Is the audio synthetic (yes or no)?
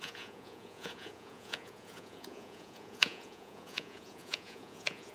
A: yes